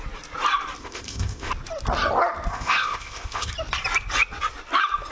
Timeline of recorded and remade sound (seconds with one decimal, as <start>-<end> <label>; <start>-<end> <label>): 0.0-0.8 recorded; 0.8-1.5 remade; 1.5-2.5 recorded; 2.5-3.5 remade; 3.5-5.1 recorded